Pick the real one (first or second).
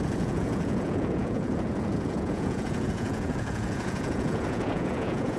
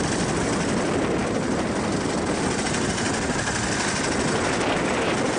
second